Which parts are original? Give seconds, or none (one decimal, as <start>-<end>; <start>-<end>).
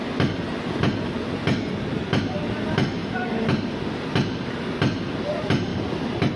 0.0-3.0; 3.8-5.7